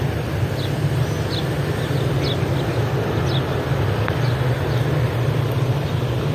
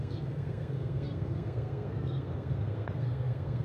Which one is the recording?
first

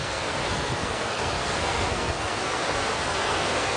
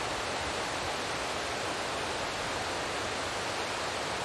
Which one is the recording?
second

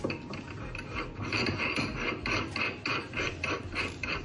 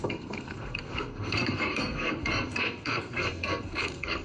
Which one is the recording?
first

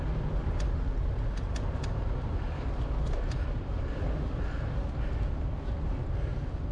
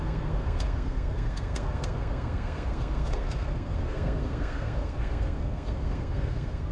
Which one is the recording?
first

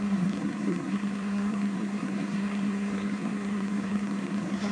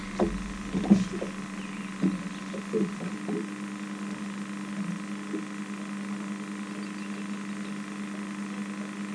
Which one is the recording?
second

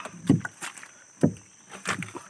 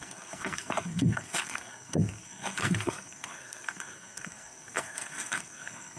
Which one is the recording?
first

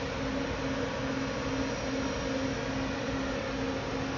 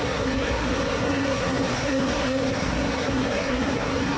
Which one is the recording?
first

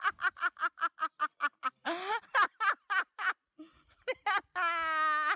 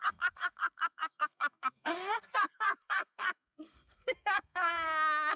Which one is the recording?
first